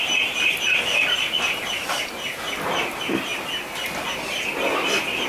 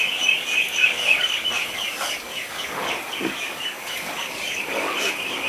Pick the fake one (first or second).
second